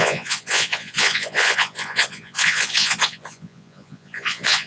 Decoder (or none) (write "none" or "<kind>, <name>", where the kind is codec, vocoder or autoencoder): vocoder, Vocos